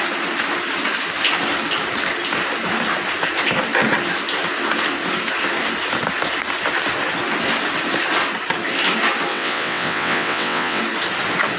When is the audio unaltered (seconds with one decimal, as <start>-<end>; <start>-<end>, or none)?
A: 0.0-9.3; 10.8-11.6